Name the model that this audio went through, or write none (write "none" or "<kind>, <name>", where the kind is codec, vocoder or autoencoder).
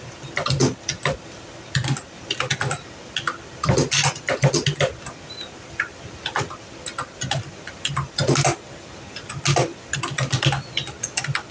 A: none